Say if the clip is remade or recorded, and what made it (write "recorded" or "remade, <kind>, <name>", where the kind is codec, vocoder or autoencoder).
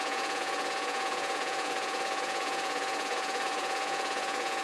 remade, vocoder, Vocos